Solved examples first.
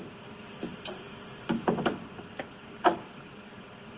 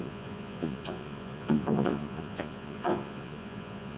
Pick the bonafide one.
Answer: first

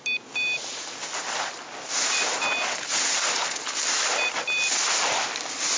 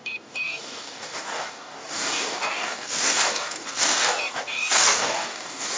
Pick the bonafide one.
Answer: first